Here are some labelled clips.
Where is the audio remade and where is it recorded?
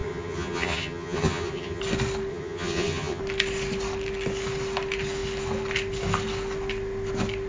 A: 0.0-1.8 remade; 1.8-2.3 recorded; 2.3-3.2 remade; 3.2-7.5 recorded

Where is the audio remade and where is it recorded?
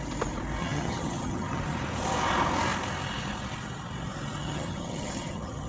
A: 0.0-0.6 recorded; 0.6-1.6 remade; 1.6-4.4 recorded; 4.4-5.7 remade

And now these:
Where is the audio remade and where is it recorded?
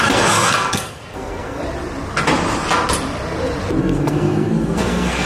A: 0.0-1.6 remade; 1.6-3.8 recorded; 3.8-5.3 remade